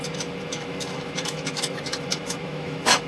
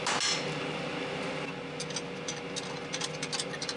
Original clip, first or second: second